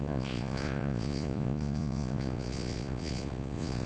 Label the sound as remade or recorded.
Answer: remade